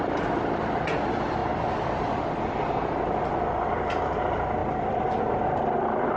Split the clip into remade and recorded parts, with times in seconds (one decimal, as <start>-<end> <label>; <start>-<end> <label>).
0.0-4.6 recorded; 4.6-5.4 remade; 5.4-6.2 recorded